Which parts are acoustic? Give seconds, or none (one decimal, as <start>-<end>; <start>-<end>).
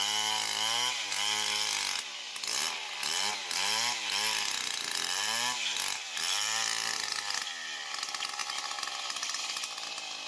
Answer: 0.0-10.3